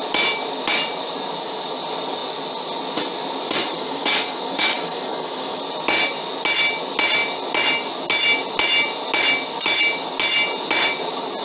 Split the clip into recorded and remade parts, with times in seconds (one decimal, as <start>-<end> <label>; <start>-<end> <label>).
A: 0.0-3.7 recorded; 3.7-5.6 remade; 5.6-11.4 recorded